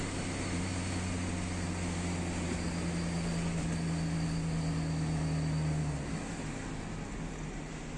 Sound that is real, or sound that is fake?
real